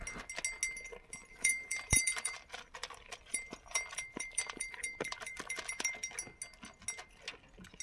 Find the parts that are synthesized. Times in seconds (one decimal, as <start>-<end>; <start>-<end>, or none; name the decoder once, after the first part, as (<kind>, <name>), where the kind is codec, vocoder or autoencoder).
1.2-5.9 (vocoder, BigVGAN v2)